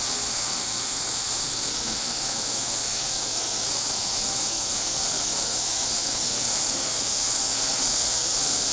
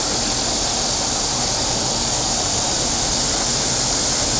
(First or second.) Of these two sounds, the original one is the second